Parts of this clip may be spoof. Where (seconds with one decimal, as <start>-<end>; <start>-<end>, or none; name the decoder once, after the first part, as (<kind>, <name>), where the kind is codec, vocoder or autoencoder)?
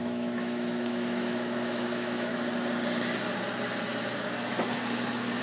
0.0-2.3 (autoencoder, DAC-VAE)